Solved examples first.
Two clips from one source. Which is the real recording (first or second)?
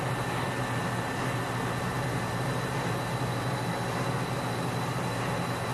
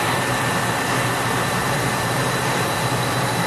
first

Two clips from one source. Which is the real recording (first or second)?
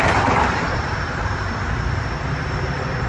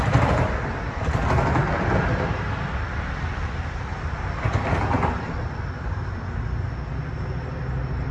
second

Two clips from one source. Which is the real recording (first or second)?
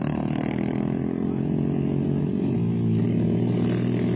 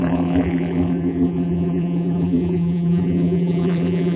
first